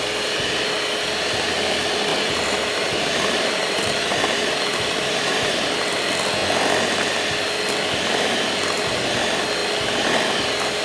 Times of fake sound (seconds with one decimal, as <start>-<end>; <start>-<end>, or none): 2.1-5.5